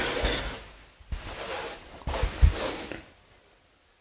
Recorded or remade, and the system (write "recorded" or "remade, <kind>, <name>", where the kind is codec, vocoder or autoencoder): recorded